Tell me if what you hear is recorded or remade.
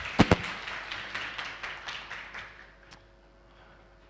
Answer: recorded